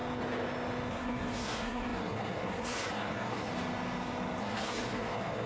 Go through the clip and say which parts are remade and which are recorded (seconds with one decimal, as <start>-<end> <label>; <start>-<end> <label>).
0.0-0.9 recorded; 0.9-3.5 remade; 3.5-4.4 recorded; 4.4-5.5 remade